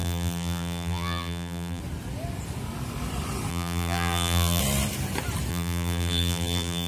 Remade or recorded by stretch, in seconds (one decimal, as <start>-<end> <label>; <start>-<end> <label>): 0.0-1.8 remade; 1.8-3.5 recorded; 3.5-4.6 remade; 4.6-5.5 recorded; 5.5-6.9 remade